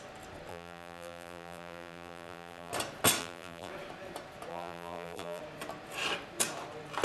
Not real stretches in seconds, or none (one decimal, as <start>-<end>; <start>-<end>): 0.5-2.7; 3.2-3.7; 4.5-5.4